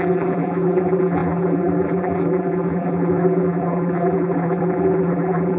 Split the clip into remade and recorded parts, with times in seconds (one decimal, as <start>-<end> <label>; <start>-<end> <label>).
0.0-5.6 remade